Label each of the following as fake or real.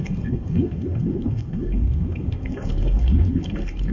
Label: fake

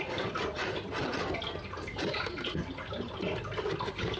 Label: real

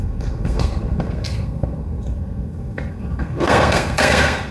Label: fake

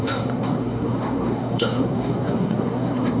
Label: fake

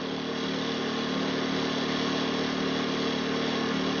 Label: real